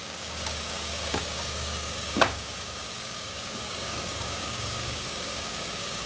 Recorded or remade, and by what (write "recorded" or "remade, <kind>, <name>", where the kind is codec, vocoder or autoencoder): remade, codec, DAC